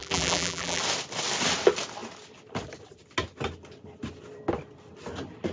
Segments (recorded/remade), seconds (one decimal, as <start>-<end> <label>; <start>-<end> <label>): 0.0-0.8 remade; 0.8-5.5 recorded

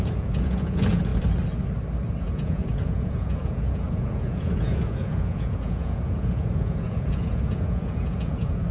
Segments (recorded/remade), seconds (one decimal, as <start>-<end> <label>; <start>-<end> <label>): 0.0-1.1 remade; 1.1-2.2 recorded; 2.2-8.7 remade

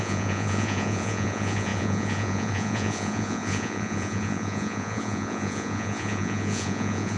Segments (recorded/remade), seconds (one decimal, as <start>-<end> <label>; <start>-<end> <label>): 0.0-7.2 remade

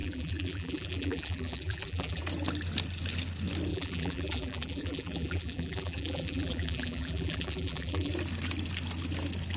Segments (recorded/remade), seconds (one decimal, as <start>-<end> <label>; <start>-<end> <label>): 0.0-2.2 remade; 2.2-3.7 recorded; 3.7-8.1 remade; 8.1-9.6 recorded